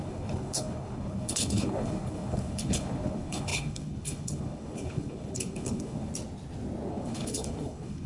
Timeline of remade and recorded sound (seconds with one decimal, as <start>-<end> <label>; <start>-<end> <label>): 0.0-6.1 remade; 6.1-6.9 recorded; 6.9-8.1 remade